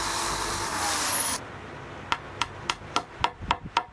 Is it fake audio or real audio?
real